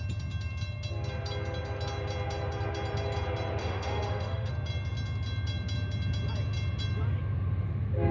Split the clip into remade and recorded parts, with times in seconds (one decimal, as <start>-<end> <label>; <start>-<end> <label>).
0.0-3.6 recorded; 3.6-4.5 remade; 4.5-8.1 recorded